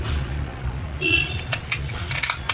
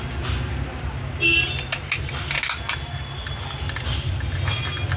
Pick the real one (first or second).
second